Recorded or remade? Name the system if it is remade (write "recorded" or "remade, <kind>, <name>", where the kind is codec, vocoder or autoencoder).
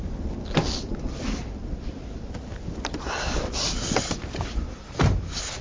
recorded